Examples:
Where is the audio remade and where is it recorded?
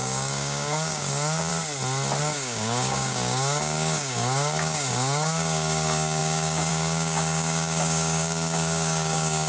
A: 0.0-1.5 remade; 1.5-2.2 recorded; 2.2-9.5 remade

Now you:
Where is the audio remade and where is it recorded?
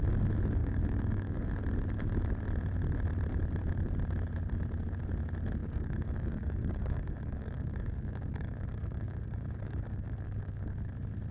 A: 0.0-0.6 recorded; 0.6-1.5 remade; 1.5-5.6 recorded; 5.6-10.9 remade; 10.9-11.3 recorded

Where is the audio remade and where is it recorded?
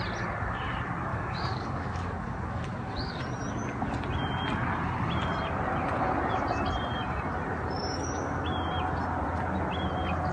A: 0.0-1.1 recorded; 1.1-3.2 remade; 3.2-10.3 recorded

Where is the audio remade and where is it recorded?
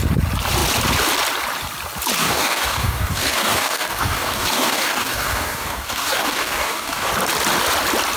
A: 0.0-2.2 recorded; 2.2-7.1 remade; 7.1-8.2 recorded